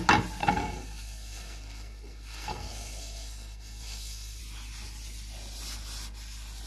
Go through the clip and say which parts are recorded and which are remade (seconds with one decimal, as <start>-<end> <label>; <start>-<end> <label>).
0.0-0.4 recorded; 0.4-4.4 remade; 4.4-6.7 recorded